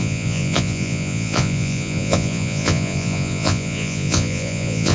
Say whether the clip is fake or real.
fake